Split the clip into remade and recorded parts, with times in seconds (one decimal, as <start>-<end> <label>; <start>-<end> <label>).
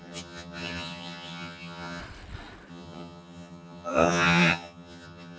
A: 0.0-2.0 remade; 2.0-2.7 recorded; 2.7-5.4 remade